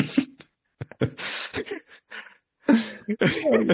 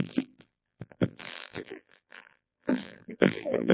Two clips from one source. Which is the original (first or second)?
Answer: first